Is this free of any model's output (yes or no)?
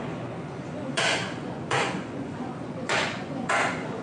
no